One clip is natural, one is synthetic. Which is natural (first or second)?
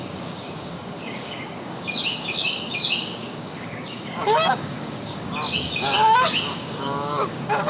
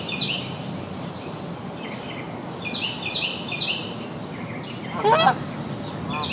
second